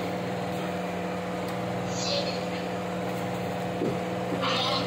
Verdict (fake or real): fake